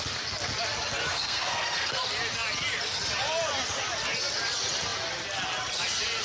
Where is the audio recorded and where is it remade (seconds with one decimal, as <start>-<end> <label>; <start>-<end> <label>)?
0.0-1.1 recorded; 1.1-2.0 remade; 2.0-6.2 recorded